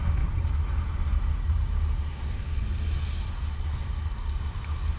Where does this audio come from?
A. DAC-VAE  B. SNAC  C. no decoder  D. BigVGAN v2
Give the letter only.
C